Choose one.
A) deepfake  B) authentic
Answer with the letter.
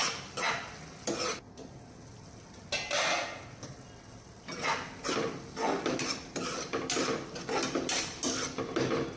B